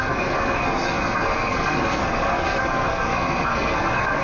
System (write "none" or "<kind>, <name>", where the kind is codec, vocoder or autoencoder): codec, SNAC